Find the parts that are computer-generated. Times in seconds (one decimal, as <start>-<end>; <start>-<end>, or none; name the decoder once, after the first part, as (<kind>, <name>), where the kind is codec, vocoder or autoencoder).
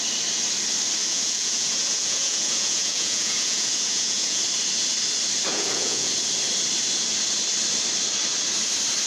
1.0-4.4 (vocoder, Vocos); 5.5-6.1